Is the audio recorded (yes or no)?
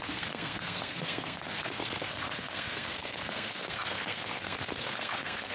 no